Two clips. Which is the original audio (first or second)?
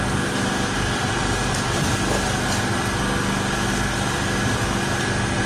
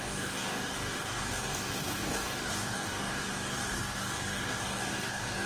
first